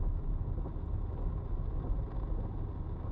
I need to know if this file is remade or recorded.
recorded